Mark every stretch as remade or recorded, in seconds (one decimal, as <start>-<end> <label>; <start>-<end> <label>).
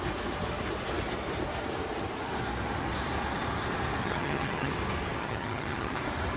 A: 0.0-4.0 recorded; 4.0-4.7 remade; 4.7-5.2 recorded; 5.2-6.0 remade; 6.0-6.4 recorded